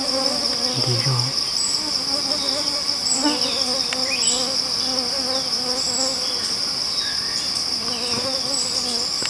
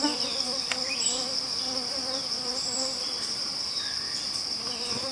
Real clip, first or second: first